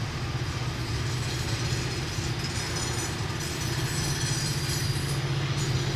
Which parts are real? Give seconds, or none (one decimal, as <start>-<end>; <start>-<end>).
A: 0.0-5.0; 5.6-6.0